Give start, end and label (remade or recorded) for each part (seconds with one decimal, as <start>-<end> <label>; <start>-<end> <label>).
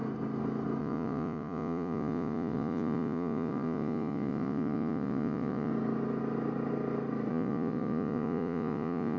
0.0-0.8 recorded; 0.8-5.7 remade; 5.7-7.3 recorded; 7.3-9.2 remade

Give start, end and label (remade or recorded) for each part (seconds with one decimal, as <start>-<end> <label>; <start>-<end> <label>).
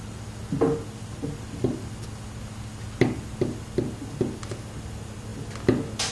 0.0-6.1 recorded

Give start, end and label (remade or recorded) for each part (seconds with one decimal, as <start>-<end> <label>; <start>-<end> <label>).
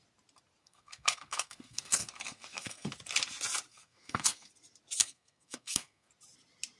0.0-0.6 recorded; 0.6-2.9 remade; 2.9-3.7 recorded; 3.7-4.5 remade; 4.5-5.0 recorded; 5.0-6.1 remade; 6.1-6.8 recorded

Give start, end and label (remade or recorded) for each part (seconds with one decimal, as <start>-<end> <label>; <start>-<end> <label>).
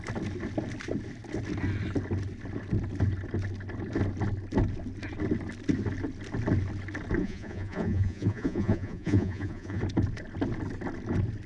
0.0-7.2 recorded; 7.2-9.8 remade; 9.8-11.5 recorded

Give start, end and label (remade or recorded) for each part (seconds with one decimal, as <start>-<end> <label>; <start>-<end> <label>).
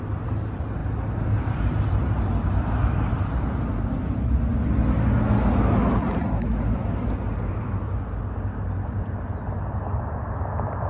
0.0-10.9 recorded